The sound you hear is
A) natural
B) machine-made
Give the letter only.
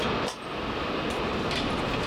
A